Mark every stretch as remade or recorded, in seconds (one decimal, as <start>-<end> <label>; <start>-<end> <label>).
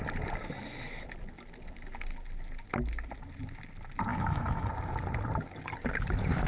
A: 0.0-4.1 recorded; 4.1-4.7 remade; 4.7-6.5 recorded